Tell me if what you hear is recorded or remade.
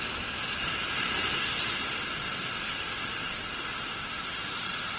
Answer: recorded